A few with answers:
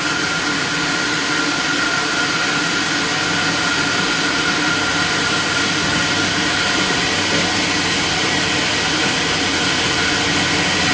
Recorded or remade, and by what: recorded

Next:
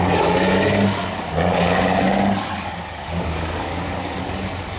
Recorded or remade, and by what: remade, codec, DAC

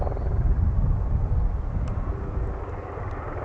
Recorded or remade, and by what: recorded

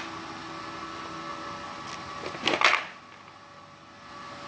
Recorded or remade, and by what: recorded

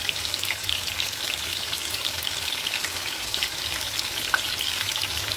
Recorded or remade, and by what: remade, codec, DAC